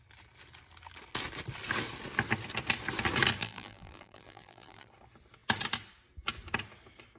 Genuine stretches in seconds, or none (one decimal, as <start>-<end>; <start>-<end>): 0.0-3.4; 4.9-7.2